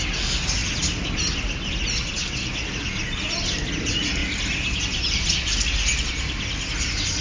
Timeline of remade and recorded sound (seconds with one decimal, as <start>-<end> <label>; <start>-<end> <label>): 0.0-7.2 recorded